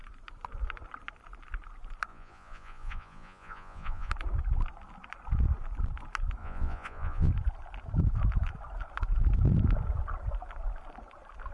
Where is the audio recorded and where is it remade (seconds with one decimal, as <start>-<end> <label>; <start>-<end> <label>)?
0.0-2.1 recorded; 2.1-4.1 remade; 4.1-6.4 recorded; 6.4-7.3 remade; 7.3-11.5 recorded

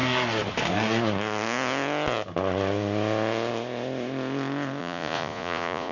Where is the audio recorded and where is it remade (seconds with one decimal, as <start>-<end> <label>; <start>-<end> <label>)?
0.0-4.8 recorded; 4.8-5.9 remade

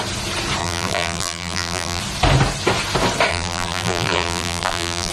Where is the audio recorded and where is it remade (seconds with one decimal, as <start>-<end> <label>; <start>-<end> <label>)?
0.0-0.6 recorded; 0.6-2.0 remade; 2.0-3.3 recorded; 3.3-5.1 remade

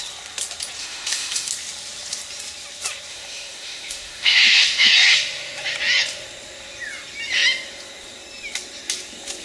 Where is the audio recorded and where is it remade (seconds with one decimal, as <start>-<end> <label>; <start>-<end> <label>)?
0.0-0.8 recorded; 0.8-1.5 remade; 1.5-3.1 recorded; 3.1-4.9 remade; 4.9-9.4 recorded

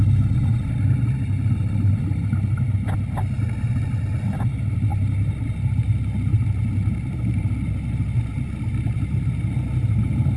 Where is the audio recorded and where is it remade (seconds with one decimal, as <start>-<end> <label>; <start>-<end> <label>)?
0.0-10.4 recorded

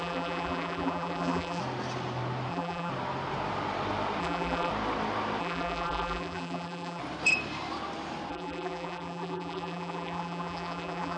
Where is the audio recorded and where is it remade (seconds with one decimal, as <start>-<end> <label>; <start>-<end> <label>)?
0.0-1.6 remade; 1.6-2.5 recorded; 2.5-2.9 remade; 2.9-4.2 recorded; 4.2-4.7 remade; 4.7-5.4 recorded; 5.4-7.0 remade; 7.0-8.3 recorded; 8.3-11.2 remade

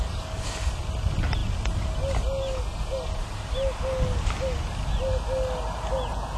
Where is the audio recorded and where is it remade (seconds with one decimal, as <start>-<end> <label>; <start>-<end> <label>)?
0.0-6.4 recorded

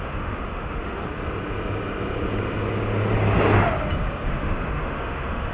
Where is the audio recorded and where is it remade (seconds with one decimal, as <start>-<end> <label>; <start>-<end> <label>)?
0.0-1.0 remade; 1.0-4.3 recorded; 4.3-5.5 remade